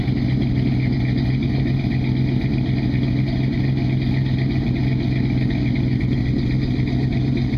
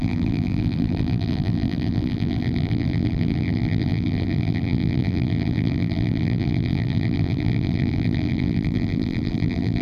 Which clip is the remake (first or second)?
second